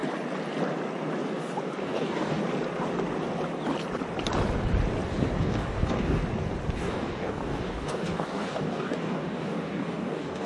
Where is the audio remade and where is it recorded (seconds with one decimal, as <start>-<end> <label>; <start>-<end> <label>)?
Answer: 0.0-1.8 recorded; 1.8-2.4 remade; 2.4-5.4 recorded; 5.4-6.2 remade; 6.2-6.7 recorded; 6.7-10.5 remade

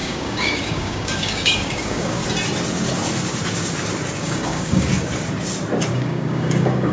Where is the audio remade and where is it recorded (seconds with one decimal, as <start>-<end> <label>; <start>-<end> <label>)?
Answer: 0.0-2.2 remade; 2.2-4.2 recorded; 4.2-4.9 remade; 4.9-5.9 recorded; 5.9-6.9 remade

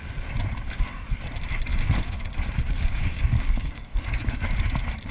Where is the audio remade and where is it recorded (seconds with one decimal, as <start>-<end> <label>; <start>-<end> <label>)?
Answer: 0.0-1.7 recorded; 1.7-5.1 remade

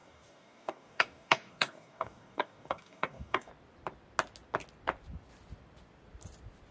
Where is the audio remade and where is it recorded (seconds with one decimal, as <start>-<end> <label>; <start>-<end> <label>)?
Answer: 0.0-3.5 remade; 3.5-6.7 recorded

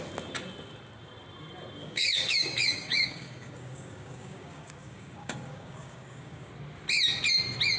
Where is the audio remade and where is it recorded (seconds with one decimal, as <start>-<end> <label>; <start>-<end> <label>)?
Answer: 0.0-1.8 recorded; 1.8-6.5 remade; 6.5-7.8 recorded

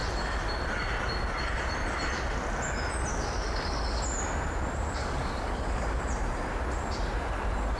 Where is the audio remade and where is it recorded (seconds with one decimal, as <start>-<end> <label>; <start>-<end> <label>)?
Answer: 0.0-3.1 recorded; 3.1-4.0 remade; 4.0-5.0 recorded; 5.0-6.0 remade; 6.0-7.8 recorded

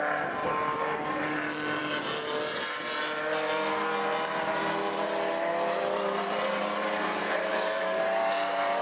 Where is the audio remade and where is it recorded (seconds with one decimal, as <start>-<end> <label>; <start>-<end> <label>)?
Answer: 0.0-7.5 recorded; 7.5-8.0 remade; 8.0-8.8 recorded